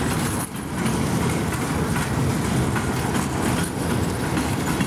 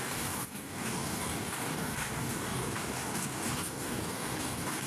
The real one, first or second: first